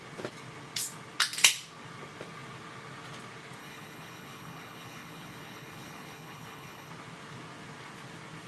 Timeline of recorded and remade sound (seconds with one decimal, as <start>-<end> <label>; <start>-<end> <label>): 0.0-3.6 recorded; 3.6-6.9 remade; 6.9-8.5 recorded